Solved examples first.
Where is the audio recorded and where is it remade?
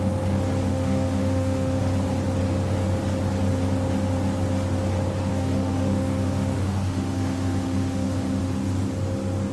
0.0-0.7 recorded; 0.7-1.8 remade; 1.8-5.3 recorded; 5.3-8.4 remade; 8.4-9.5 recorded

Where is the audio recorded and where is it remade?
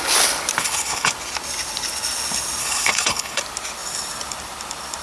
0.0-0.6 recorded; 0.6-1.1 remade; 1.1-2.6 recorded; 2.6-3.4 remade; 3.4-5.0 recorded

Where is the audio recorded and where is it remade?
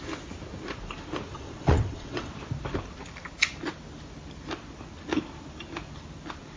0.0-1.3 recorded; 1.3-2.3 remade; 2.3-6.6 recorded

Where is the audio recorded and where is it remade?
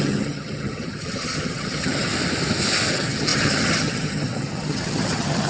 0.0-2.1 remade; 2.1-2.9 recorded; 2.9-5.5 remade